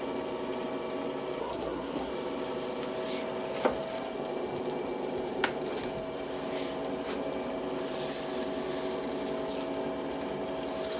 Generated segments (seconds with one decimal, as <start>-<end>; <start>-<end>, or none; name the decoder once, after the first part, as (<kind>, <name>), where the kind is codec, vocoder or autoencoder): 1.4-2.1 (codec, SNAC)